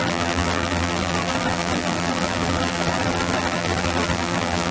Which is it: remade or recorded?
remade